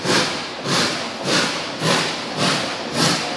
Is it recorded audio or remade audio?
recorded